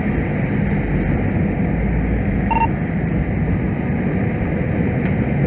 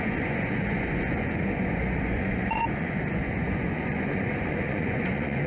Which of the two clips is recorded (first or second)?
first